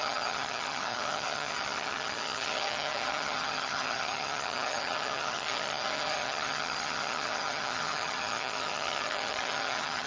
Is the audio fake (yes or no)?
yes